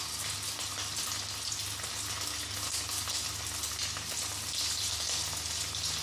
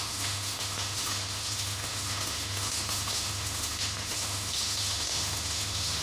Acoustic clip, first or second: first